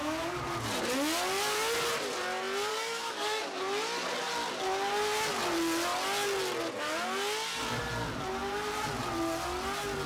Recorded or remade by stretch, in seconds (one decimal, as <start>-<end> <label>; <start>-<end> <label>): 0.0-2.7 recorded; 2.7-3.4 remade; 3.4-10.1 recorded